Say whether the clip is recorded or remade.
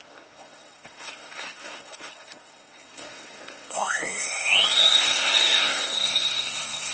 remade